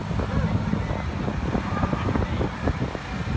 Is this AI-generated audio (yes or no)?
no